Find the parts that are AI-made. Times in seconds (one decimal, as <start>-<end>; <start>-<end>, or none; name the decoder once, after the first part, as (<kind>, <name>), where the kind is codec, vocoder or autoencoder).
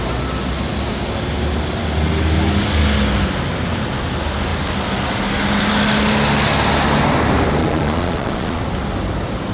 7.6-8.6 (vocoder, Vocos)